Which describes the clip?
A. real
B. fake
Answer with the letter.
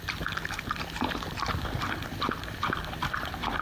B